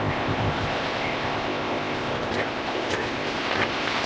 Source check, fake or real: fake